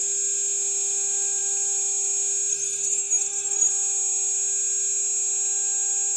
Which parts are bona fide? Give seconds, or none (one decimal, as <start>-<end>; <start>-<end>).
0.0-2.5; 3.7-6.2